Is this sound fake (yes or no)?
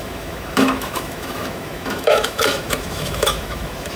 yes